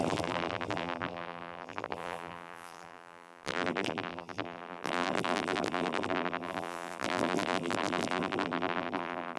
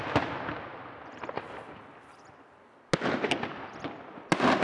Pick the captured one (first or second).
second